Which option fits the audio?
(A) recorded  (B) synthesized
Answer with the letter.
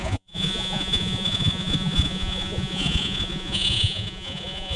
B